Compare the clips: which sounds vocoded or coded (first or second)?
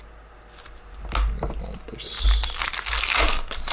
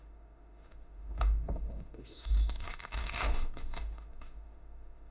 second